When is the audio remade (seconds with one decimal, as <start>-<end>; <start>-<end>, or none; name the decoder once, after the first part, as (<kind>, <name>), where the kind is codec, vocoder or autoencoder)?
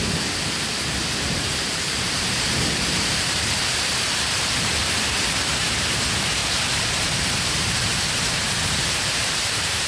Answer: 0.0-4.8 (vocoder, BigVGAN v2); 5.5-6.4; 7.2-9.9